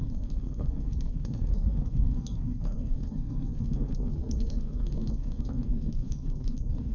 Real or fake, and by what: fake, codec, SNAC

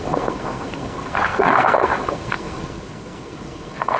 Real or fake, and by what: fake, codec, SNAC